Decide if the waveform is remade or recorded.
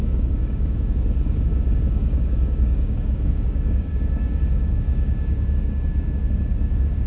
remade